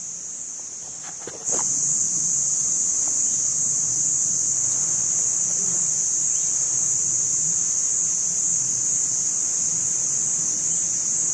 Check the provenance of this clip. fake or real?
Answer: real